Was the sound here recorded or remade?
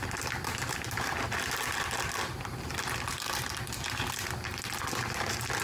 recorded